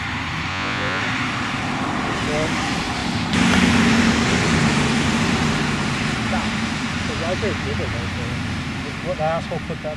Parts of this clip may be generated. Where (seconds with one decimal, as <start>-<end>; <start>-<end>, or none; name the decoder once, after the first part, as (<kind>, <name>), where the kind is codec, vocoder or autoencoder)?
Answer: 0.5-1.0 (vocoder, Vocos)